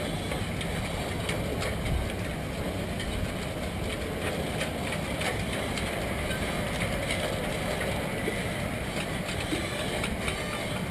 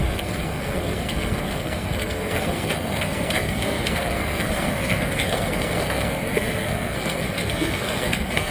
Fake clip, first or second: second